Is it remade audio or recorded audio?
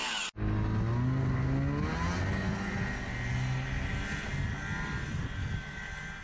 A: recorded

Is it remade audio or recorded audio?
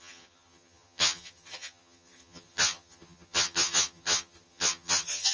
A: remade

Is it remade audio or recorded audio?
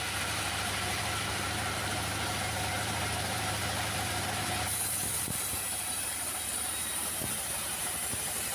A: remade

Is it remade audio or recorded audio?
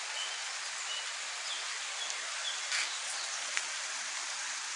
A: recorded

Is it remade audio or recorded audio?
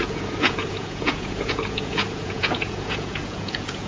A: remade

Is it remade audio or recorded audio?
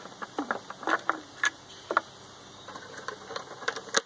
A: recorded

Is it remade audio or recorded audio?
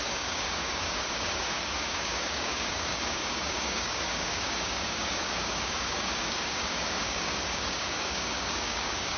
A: remade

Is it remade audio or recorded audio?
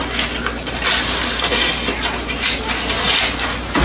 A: recorded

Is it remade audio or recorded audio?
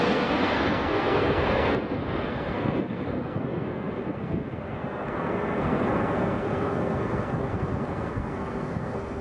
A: remade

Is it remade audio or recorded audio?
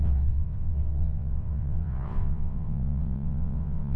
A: remade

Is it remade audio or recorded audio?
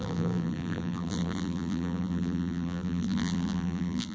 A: remade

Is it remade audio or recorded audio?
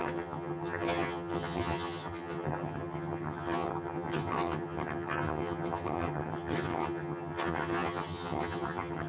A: remade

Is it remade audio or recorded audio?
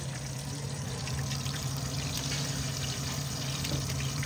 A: remade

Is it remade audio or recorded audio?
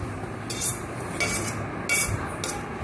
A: recorded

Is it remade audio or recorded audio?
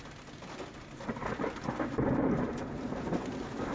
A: recorded